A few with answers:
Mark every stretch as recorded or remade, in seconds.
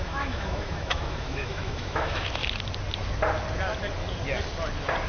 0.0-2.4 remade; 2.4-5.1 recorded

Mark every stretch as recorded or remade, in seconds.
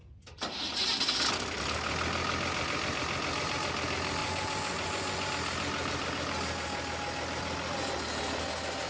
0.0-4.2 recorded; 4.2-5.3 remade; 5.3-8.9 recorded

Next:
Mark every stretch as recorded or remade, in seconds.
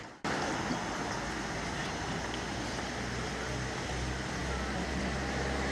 0.0-5.7 recorded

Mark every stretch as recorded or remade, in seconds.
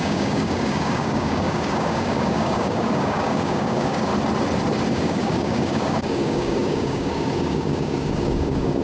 0.0-4.1 remade; 4.1-4.9 recorded; 4.9-8.8 remade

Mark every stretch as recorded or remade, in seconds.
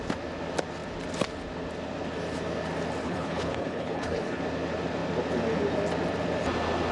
0.0-3.0 recorded; 3.0-4.4 remade; 4.4-6.9 recorded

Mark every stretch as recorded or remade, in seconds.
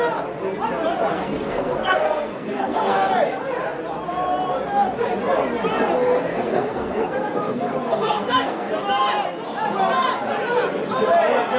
0.0-1.1 recorded; 1.1-3.1 remade; 3.1-6.3 recorded; 6.3-8.7 remade; 8.7-11.6 recorded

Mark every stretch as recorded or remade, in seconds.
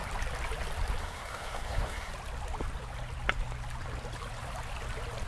0.0-1.0 recorded; 1.0-2.1 remade; 2.1-5.3 recorded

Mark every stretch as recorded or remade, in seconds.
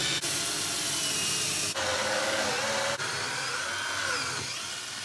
0.0-1.9 recorded; 1.9-2.5 remade; 2.5-5.0 recorded